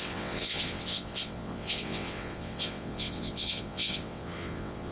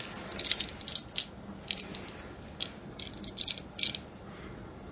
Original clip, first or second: second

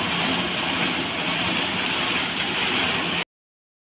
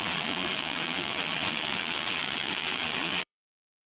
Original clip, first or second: first